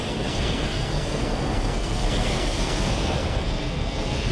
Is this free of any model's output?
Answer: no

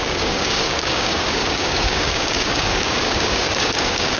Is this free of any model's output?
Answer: no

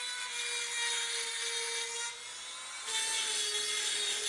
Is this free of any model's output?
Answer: yes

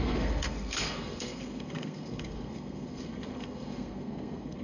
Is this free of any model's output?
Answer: no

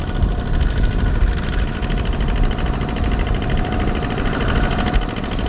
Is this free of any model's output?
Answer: yes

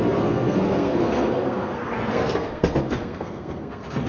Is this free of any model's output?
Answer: no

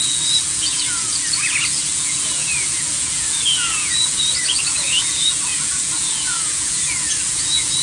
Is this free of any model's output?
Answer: no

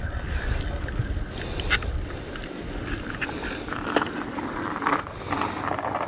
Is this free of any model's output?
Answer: yes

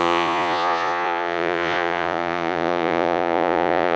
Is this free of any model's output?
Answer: no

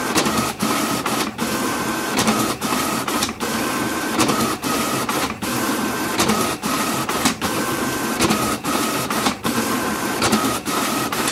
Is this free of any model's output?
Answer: no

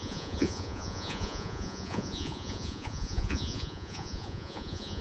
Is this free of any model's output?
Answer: no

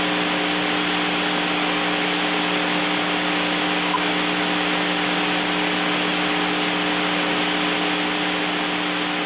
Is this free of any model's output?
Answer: yes